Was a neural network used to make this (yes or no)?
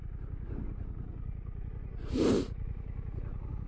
no